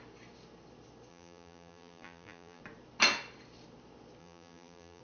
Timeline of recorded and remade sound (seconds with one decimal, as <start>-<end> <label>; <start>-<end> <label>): 0.0-1.1 recorded; 1.1-2.6 remade; 2.6-4.2 recorded; 4.2-5.0 remade